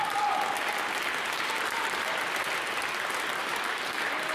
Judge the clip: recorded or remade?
recorded